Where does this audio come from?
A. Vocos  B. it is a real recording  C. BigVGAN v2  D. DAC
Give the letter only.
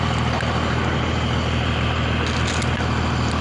B